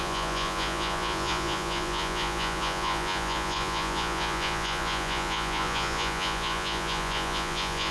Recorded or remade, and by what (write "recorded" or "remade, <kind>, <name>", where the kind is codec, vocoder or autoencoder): remade, vocoder, Vocos